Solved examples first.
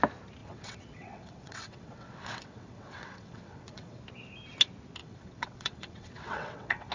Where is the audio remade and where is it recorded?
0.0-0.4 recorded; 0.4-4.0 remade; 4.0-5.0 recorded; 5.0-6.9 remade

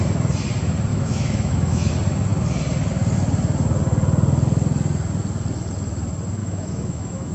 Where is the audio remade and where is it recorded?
0.0-0.9 recorded; 0.9-1.9 remade; 1.9-6.4 recorded; 6.4-7.3 remade

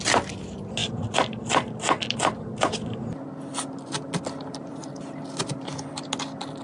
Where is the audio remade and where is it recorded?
0.0-6.6 recorded

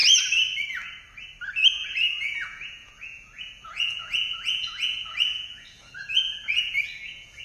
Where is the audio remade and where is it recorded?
0.0-1.7 recorded; 1.7-7.4 remade

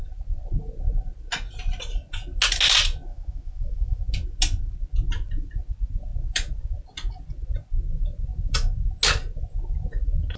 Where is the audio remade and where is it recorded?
0.0-3.1 recorded; 3.1-4.0 remade; 4.0-10.4 recorded

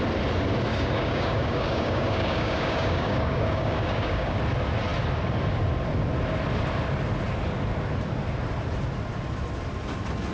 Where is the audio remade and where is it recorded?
0.0-0.7 recorded; 0.7-4.4 remade; 4.4-10.3 recorded